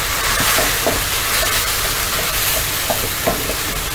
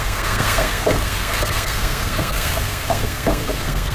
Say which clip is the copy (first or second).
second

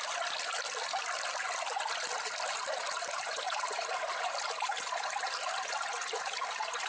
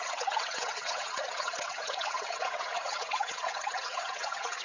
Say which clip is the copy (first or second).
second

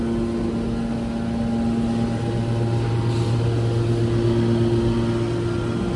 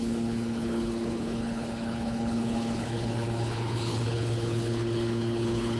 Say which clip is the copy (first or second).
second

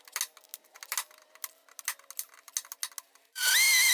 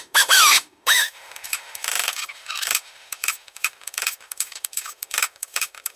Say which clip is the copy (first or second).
second